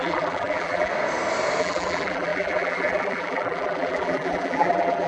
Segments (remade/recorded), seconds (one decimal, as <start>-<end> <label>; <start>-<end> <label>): 0.0-0.9 remade; 0.9-1.6 recorded; 1.6-5.1 remade